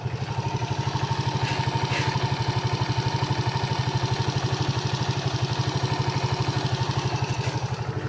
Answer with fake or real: real